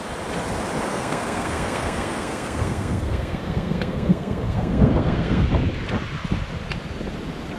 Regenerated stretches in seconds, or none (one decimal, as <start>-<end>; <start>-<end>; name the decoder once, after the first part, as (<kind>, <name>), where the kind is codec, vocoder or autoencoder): 0.9-5.5 (codec, SNAC)